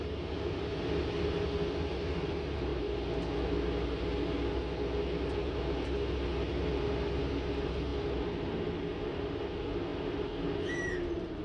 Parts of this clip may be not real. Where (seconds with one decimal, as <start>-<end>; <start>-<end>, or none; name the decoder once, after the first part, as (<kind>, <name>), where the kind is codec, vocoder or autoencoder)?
none